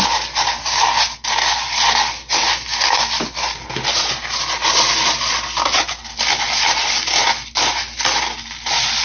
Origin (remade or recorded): recorded